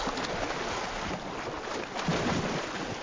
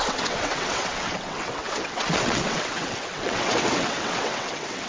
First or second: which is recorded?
first